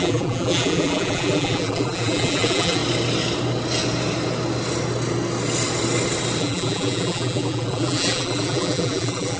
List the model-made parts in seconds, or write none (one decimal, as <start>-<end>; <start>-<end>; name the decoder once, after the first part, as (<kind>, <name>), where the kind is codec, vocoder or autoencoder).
0.0-2.8 (vocoder, BigVGAN v2); 6.4-9.4

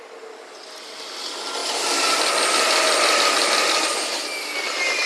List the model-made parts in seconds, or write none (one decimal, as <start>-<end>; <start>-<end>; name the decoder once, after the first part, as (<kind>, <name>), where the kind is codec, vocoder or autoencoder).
none

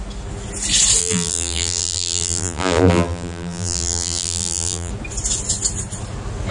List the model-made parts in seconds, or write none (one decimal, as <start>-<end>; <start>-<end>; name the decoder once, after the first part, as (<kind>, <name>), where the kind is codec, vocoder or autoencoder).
1.0-4.9 (vocoder, BigVGAN v2)